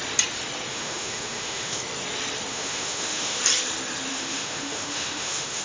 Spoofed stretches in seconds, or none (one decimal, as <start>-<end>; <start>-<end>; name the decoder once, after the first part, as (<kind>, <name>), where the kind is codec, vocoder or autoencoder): 0.7-1.8 (autoencoder, DAC-VAE); 2.5-3.4; 4.1-5.6